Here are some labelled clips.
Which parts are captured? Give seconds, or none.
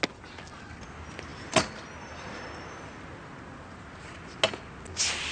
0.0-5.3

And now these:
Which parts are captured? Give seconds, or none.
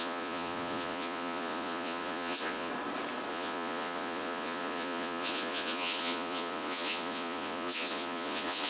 2.7-3.3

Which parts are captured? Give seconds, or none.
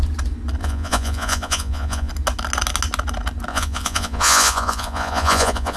0.0-0.6; 2.1-3.5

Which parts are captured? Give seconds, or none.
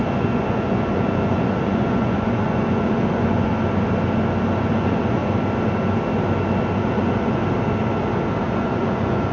3.5-4.6; 5.2-6.8; 7.4-8.4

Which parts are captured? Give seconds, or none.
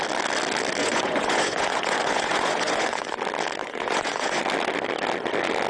0.0-0.8; 3.2-3.6; 4.4-5.7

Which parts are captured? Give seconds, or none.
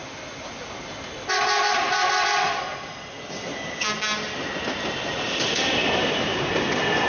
0.0-7.1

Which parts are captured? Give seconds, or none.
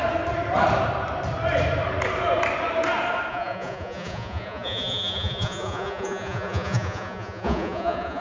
0.0-3.3